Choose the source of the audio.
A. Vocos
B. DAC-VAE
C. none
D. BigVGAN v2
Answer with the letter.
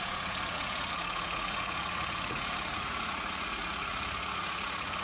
A